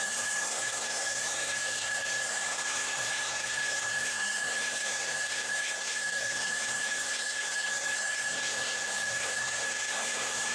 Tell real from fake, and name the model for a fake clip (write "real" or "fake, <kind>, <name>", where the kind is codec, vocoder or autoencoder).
fake, codec, SNAC